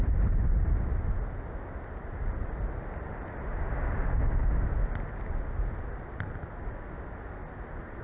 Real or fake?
real